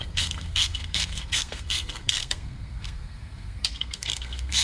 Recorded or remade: remade